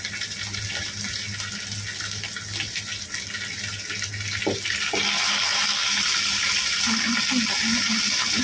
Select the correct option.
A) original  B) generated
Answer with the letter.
A